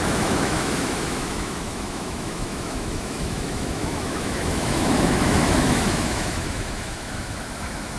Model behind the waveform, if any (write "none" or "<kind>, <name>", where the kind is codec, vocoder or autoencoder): autoencoder, DAC-VAE